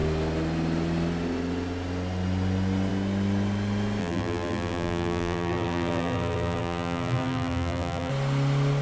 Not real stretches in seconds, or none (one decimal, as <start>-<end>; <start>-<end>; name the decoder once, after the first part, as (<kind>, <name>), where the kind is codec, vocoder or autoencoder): 4.0-8.1 (vocoder, BigVGAN v2)